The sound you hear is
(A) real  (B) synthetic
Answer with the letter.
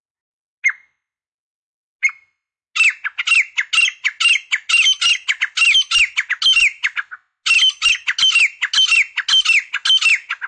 A